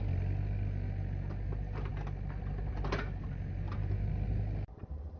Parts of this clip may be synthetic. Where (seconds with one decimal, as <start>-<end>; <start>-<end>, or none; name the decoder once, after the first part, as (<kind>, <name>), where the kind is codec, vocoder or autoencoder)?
none